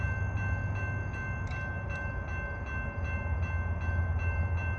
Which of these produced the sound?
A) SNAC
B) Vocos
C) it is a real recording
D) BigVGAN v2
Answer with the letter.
C